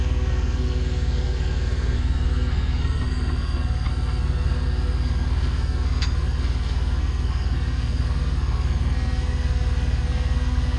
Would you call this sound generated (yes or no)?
yes